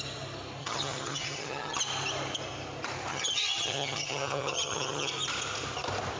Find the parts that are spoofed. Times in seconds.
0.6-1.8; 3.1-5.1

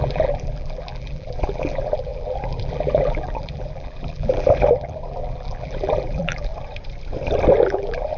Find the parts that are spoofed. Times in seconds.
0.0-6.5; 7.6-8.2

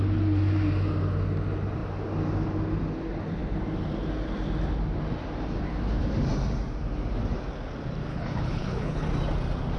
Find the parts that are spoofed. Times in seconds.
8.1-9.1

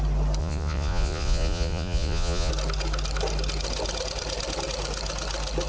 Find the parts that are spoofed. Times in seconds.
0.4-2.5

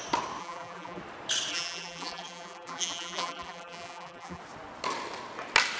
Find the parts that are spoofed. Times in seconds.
0.4-1.0; 1.5-4.4

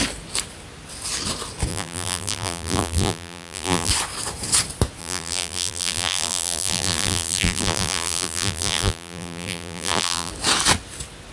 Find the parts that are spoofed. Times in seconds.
1.7-3.9; 5.0-10.3

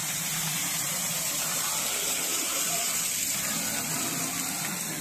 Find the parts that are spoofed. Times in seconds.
0.0-1.7; 2.3-3.0